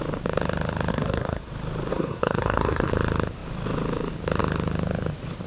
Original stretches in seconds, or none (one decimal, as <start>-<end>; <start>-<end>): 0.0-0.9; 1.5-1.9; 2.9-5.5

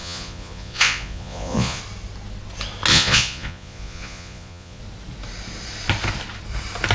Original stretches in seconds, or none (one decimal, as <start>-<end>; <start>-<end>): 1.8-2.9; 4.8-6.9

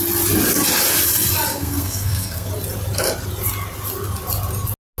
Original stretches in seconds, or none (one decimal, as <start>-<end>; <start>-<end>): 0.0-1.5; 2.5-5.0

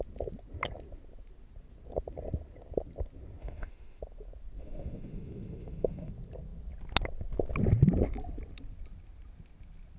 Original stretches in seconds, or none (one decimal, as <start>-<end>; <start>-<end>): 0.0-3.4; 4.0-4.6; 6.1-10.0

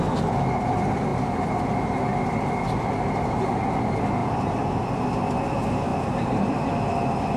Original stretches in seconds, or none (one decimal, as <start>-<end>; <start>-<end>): 0.0-1.1; 1.6-4.2; 4.9-5.9; 6.7-7.4

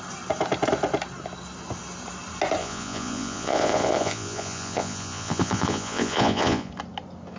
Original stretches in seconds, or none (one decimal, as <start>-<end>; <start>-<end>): 0.0-2.6; 6.7-7.4

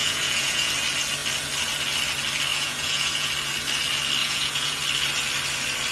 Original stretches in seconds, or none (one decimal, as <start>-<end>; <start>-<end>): 0.7-2.5; 3.3-4.2; 4.8-5.9